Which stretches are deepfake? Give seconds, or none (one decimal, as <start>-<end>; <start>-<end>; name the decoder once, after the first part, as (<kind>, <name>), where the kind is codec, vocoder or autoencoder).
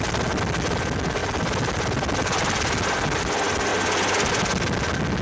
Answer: none